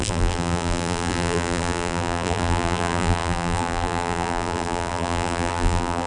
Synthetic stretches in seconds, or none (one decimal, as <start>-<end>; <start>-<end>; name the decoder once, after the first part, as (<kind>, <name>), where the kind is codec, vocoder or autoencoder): 0.0-6.1 (vocoder, BigVGAN v2)

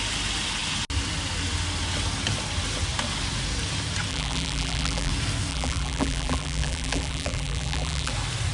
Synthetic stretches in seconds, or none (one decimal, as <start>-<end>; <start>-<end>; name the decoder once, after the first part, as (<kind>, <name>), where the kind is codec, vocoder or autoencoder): 4.1-5.1 (vocoder, BigVGAN v2); 5.5-8.1

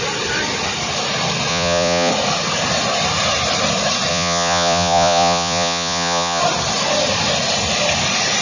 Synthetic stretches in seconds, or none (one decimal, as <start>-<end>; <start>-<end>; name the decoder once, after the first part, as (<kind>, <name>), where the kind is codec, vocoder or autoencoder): 1.5-2.1 (vocoder, Vocos); 4.1-6.4

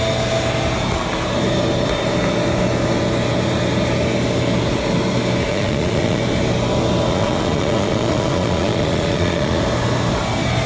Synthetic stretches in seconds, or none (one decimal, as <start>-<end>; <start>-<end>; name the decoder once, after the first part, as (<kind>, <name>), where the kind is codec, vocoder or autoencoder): 5.5-6.2 (vocoder, Vocos); 7.1-9.6

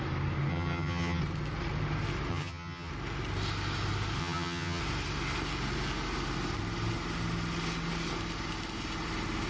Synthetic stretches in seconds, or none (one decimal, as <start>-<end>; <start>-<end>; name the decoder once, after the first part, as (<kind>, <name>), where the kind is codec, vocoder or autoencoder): 0.5-1.2 (vocoder, HiFi-GAN); 2.3-2.9; 4.2-4.8